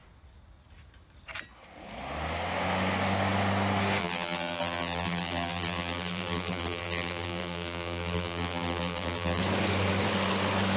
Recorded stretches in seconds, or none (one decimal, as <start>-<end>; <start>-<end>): 0.0-4.0; 9.4-10.8